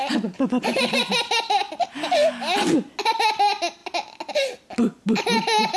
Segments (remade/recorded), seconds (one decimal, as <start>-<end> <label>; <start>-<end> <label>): 0.0-1.0 remade; 1.0-5.8 recorded